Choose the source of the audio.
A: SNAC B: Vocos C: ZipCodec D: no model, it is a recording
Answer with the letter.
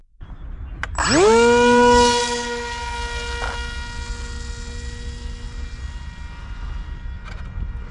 D